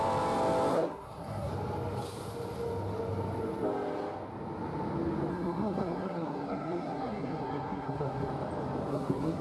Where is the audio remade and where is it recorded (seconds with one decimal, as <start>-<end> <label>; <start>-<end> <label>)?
0.0-0.7 recorded; 0.7-1.5 remade; 1.5-5.3 recorded; 5.3-8.3 remade; 8.3-8.9 recorded; 8.9-9.4 remade